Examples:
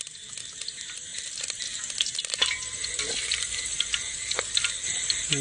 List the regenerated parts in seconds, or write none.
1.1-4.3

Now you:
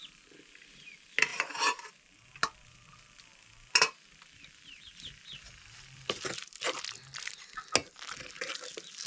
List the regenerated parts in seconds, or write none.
1.3-1.8

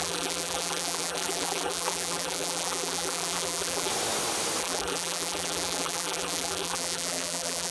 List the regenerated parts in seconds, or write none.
0.0-3.9; 4.6-7.7

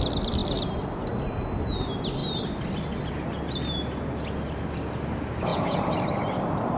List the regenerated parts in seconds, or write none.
0.4-1.0; 2.2-3.1; 5.5-6.2

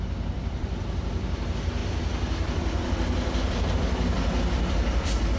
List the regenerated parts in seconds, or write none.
0.0-5.4